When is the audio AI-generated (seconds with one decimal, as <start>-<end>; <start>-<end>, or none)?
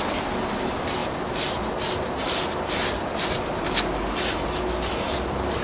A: none